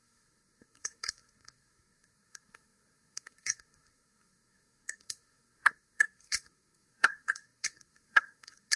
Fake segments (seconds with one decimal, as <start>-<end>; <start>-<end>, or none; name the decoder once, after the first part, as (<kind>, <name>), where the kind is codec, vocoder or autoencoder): 0.0-8.8 (codec, SNAC)